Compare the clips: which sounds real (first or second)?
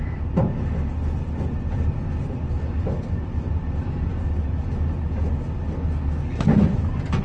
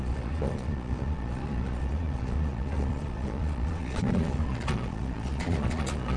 first